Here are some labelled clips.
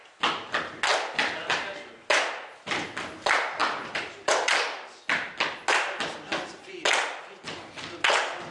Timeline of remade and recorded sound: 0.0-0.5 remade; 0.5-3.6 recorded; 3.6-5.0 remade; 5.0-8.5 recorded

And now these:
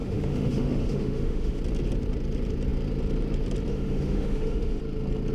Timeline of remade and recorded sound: 0.0-1.6 remade; 1.6-3.7 recorded; 3.7-4.8 remade; 4.8-5.3 recorded

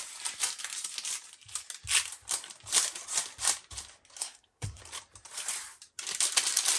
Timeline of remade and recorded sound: 0.0-4.2 recorded; 4.2-4.8 remade; 4.8-6.8 recorded

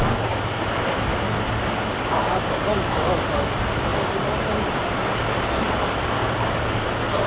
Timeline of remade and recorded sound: 0.0-3.9 recorded; 3.9-4.8 remade; 4.8-6.2 recorded; 6.2-7.3 remade

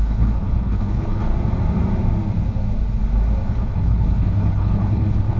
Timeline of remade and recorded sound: 0.0-1.3 remade; 1.3-3.5 recorded; 3.5-5.4 remade

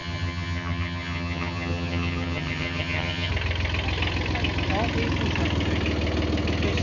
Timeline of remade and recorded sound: 0.0-3.3 remade; 3.3-6.8 recorded

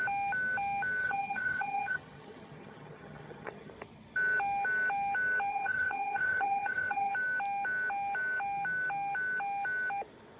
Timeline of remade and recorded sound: 0.0-1.0 recorded; 1.0-3.7 remade; 3.7-5.5 recorded; 5.5-7.1 remade; 7.1-10.4 recorded